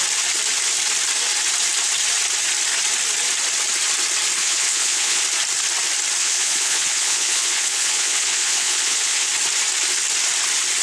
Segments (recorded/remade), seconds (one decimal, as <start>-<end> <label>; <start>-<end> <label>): 0.0-4.4 recorded; 4.4-5.2 remade; 5.2-6.2 recorded; 6.2-9.3 remade; 9.3-10.8 recorded